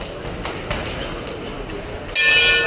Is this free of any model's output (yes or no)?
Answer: yes